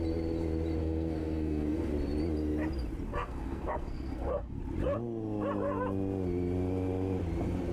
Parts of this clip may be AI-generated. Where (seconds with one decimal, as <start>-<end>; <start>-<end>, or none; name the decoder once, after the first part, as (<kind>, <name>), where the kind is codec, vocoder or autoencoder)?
0.8-1.9 (codec, SNAC); 3.1-4.6